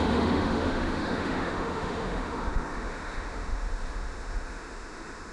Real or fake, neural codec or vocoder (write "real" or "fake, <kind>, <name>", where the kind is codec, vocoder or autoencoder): fake, autoencoder, DAC-VAE